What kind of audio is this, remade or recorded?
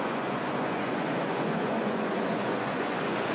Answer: remade